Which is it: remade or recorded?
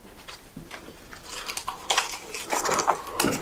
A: recorded